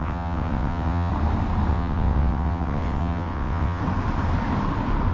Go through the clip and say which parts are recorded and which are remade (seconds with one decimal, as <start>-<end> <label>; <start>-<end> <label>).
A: 0.0-1.1 remade; 1.1-1.7 recorded; 1.7-3.8 remade; 3.8-5.1 recorded